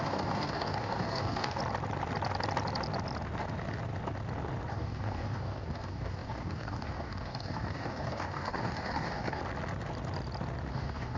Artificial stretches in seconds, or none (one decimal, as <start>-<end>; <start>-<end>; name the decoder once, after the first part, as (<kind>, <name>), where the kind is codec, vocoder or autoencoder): 0.0-1.6 (codec, DAC); 4.7-9.4; 10.7-11.2